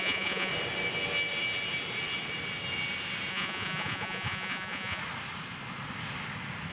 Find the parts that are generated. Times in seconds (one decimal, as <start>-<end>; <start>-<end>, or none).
0.0-0.5; 3.3-5.0